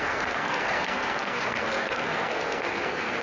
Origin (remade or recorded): remade